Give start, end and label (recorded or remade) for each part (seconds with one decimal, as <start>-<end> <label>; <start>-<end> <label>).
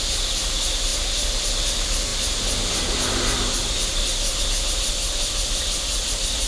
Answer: 0.0-6.5 recorded